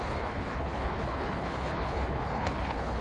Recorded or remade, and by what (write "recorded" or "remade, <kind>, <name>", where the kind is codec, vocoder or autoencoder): remade, codec, HILCodec